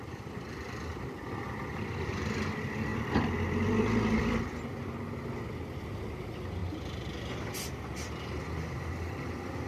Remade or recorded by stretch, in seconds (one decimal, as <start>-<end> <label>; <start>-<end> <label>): 0.0-9.7 recorded